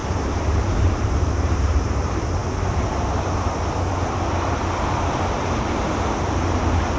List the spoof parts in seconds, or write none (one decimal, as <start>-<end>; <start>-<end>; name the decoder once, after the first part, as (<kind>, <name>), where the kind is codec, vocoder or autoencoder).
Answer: 0.0-2.4 (vocoder, BigVGAN v2); 4.9-7.0